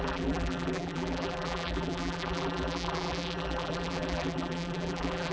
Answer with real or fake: fake